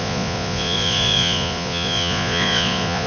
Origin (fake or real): fake